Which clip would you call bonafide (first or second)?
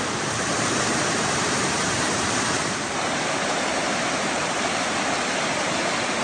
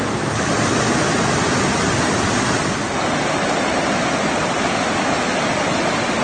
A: second